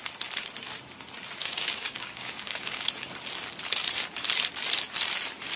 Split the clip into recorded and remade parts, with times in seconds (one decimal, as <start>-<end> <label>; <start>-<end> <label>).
0.0-1.4 recorded; 1.4-2.9 remade; 2.9-5.6 recorded